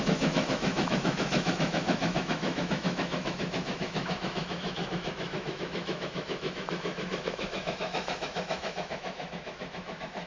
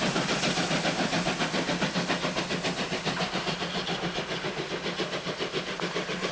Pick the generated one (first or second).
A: first